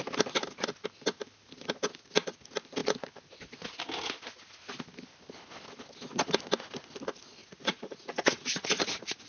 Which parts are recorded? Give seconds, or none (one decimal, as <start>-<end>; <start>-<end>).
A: 0.0-7.4